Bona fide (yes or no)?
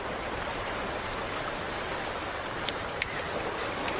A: yes